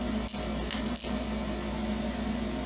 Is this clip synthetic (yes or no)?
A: no